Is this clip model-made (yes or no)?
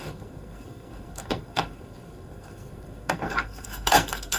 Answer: yes